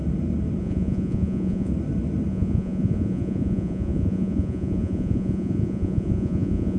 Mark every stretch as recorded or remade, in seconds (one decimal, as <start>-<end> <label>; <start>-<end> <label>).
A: 0.0-0.6 recorded; 0.6-1.7 remade; 1.7-2.3 recorded; 2.3-6.8 remade